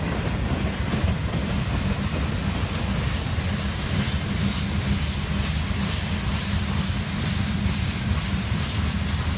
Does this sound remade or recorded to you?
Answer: recorded